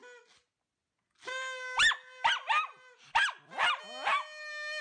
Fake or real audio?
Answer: real